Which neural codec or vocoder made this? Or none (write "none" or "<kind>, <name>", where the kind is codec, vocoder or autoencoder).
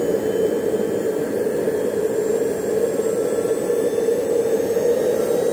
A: none